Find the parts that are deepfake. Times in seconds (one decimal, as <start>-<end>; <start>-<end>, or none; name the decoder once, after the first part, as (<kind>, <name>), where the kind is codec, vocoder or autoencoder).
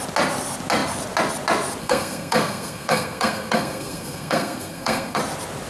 1.8-5.2 (codec, SNAC)